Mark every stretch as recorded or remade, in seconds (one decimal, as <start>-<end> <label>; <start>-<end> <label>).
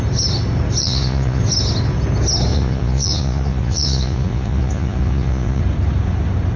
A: 0.0-0.8 recorded; 0.8-1.4 remade; 1.4-2.5 recorded; 2.5-5.6 remade; 5.6-6.6 recorded